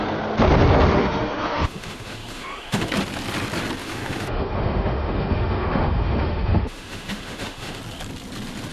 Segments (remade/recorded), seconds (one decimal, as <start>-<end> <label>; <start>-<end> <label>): 0.0-0.9 recorded; 0.9-2.9 remade; 2.9-3.8 recorded; 3.8-7.8 remade; 7.8-8.7 recorded